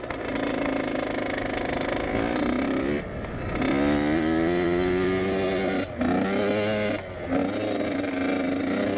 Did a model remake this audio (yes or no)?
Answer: no